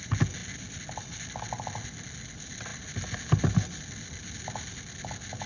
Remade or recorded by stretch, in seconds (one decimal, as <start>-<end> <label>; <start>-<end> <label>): 0.0-5.5 recorded